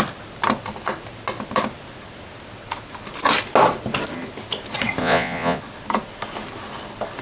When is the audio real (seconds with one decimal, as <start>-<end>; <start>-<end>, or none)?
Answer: 0.0-5.0; 5.6-7.2